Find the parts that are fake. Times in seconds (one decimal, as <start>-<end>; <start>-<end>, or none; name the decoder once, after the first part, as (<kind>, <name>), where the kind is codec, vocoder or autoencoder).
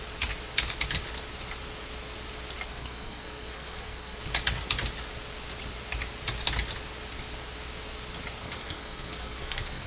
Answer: 2.7-4.2 (codec, SNAC); 8.4-9.9